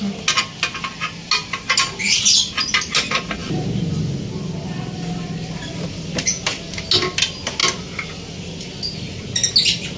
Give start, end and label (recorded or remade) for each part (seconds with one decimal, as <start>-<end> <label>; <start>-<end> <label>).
0.0-10.0 recorded